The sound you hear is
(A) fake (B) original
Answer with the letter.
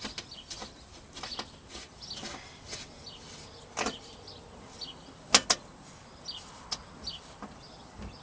B